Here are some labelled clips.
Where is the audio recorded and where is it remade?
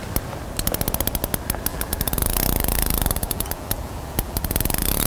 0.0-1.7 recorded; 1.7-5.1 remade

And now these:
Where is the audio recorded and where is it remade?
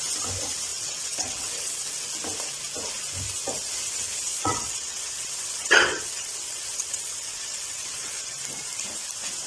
0.0-0.7 recorded; 0.7-2.1 remade; 2.1-4.3 recorded; 4.3-8.4 remade; 8.4-9.5 recorded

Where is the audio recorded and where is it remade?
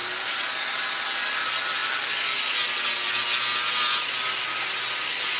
0.0-5.4 recorded